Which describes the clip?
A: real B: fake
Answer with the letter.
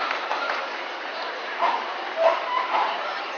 B